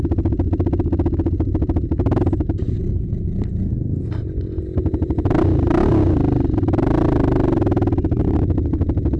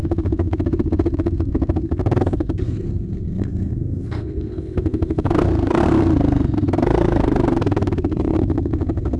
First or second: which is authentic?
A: first